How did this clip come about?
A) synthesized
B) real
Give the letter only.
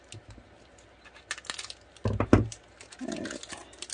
B